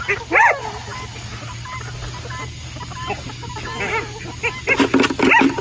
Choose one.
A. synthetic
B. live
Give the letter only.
B